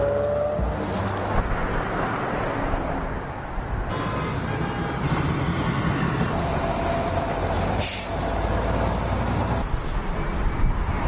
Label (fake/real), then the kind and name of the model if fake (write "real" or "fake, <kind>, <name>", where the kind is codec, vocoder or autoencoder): real